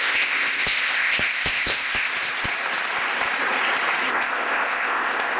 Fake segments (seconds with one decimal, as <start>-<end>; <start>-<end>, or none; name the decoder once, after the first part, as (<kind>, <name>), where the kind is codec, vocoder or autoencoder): 0.0-2.1 (codec, ZipCodec); 4.1-5.4